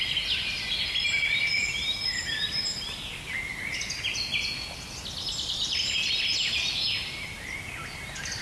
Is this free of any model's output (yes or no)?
yes